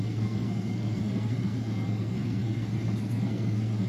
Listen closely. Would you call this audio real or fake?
fake